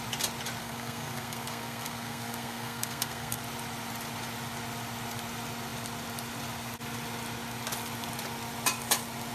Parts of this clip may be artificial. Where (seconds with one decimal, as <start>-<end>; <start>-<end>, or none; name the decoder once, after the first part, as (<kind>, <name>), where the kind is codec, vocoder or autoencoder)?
0.6-3.4 (codec, SNAC)